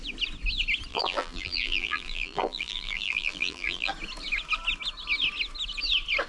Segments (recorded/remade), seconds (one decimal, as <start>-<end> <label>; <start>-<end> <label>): 0.0-0.9 recorded; 0.9-3.9 remade; 3.9-6.3 recorded